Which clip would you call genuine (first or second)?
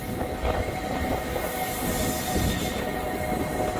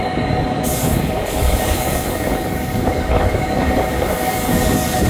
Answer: first